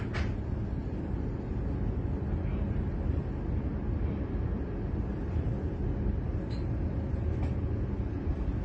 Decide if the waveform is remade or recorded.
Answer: recorded